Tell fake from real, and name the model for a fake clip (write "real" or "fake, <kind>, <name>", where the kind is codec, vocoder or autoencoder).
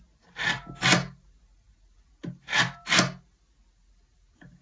real